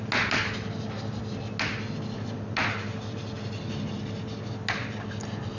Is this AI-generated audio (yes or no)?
no